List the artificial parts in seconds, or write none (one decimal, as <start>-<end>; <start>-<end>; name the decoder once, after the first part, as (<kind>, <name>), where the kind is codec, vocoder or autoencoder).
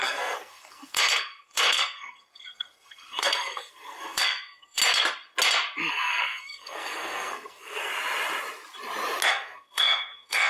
0.0-4.8 (codec, SNAC); 5.9-7.9; 9.3-10.5